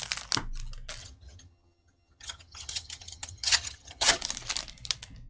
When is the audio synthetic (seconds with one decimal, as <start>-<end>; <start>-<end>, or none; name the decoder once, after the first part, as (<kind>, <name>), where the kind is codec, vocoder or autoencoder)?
1.0-4.2 (vocoder, HiFi-GAN)

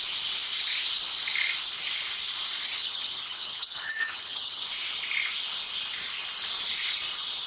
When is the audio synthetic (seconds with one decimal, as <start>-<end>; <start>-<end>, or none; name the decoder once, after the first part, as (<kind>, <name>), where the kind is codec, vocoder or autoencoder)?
2.8-4.6 (vocoder, HiFi-GAN)

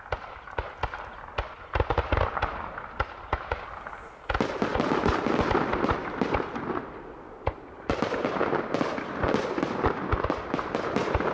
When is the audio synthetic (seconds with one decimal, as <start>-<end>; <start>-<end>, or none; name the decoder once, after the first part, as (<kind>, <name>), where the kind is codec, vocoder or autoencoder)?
none

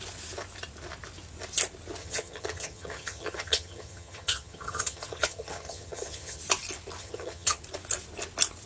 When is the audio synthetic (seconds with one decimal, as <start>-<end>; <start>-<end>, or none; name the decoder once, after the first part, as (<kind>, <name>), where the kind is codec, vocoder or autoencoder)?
2.0-6.4 (vocoder, HiFi-GAN); 7.0-7.6

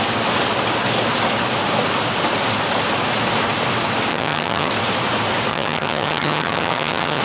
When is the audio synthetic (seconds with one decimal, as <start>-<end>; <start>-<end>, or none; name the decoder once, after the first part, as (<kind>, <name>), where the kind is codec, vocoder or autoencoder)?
4.1-4.7 (vocoder, HiFi-GAN); 5.5-7.2